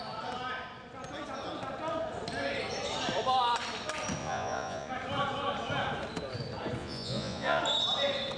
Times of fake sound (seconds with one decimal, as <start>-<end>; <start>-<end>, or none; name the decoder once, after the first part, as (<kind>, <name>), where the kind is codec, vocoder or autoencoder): 4.2-4.9 (vocoder, Vocos); 6.8-7.6